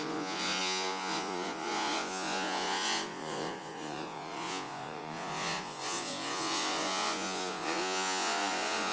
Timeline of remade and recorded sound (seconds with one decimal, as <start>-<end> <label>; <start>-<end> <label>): 0.0-8.9 remade